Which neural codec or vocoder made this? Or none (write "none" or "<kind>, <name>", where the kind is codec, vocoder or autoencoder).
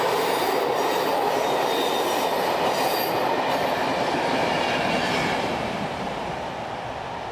none